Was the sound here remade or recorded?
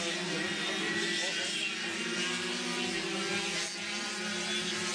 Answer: recorded